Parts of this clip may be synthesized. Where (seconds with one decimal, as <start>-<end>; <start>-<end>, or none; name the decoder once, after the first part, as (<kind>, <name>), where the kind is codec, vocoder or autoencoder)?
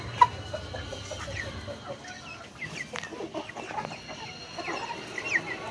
none